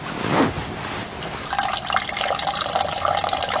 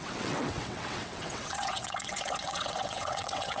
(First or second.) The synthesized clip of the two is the second